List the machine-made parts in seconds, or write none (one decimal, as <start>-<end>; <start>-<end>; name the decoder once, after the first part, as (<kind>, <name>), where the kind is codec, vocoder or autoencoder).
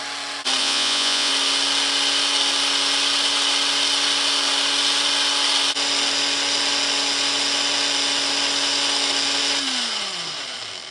0.6-1.3 (vocoder, Vocos)